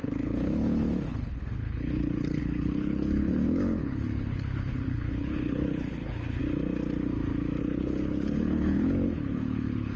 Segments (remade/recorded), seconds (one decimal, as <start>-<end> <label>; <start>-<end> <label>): 0.0-6.4 remade; 6.4-7.6 recorded; 7.6-10.0 remade